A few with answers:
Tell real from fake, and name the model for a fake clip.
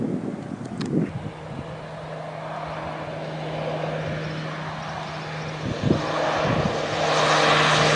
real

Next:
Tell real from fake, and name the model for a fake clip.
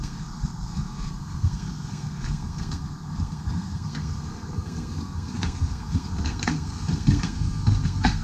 fake, codec, SNAC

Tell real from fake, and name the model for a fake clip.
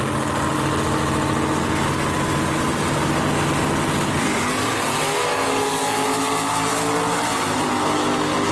real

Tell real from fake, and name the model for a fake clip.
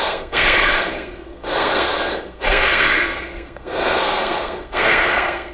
fake, codec, SNAC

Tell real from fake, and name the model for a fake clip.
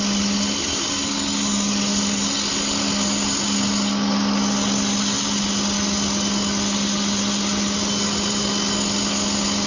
real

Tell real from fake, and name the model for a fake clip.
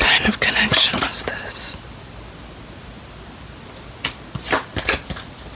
real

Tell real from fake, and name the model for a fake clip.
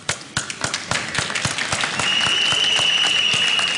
real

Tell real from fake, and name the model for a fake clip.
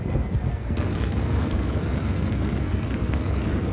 fake, codec, SNAC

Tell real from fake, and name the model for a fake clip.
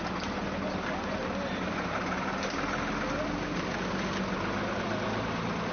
real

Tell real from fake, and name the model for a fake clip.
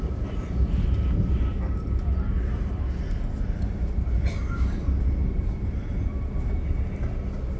real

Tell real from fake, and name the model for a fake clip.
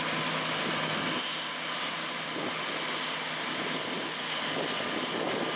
real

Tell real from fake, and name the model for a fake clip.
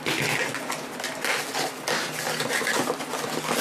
real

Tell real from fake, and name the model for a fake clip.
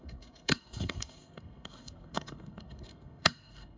fake, codec, SNAC